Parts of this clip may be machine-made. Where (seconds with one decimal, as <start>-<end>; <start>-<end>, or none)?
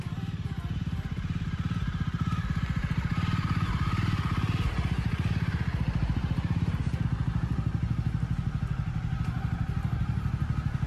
2.8-6.8